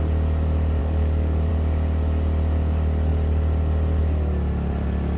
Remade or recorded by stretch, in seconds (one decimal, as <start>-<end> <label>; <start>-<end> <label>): 0.0-0.8 recorded; 0.8-1.5 remade; 1.5-5.2 recorded